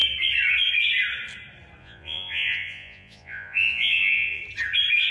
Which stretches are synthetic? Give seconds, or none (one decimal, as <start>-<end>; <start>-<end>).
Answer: 1.8-4.4